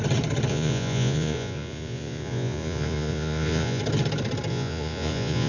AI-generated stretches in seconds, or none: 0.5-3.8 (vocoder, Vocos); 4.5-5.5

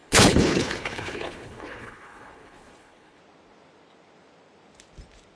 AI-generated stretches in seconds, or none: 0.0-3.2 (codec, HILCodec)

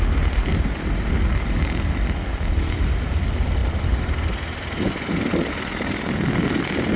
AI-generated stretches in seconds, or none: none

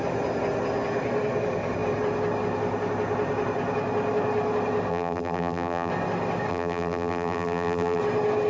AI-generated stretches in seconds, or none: 4.9-5.9 (vocoder, BigVGAN v2); 6.5-8.0

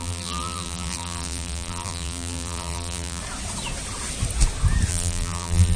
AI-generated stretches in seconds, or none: 0.0-3.2 (vocoder, BigVGAN v2); 4.9-5.8